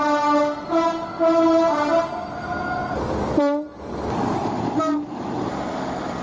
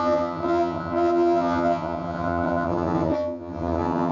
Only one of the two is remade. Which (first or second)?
second